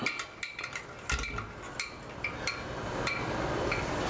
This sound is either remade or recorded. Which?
recorded